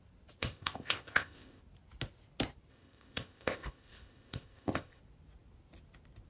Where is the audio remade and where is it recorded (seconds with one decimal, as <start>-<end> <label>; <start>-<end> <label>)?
0.0-0.4 recorded; 0.4-1.6 remade; 1.6-2.7 recorded; 2.7-5.0 remade; 5.0-6.3 recorded